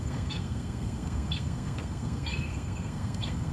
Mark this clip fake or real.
fake